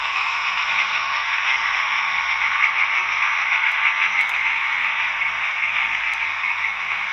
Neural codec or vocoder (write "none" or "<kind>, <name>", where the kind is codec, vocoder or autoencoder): codec, SNAC